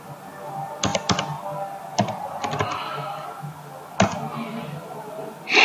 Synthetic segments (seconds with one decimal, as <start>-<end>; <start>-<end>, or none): none